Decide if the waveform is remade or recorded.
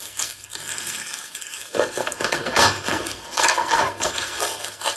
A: remade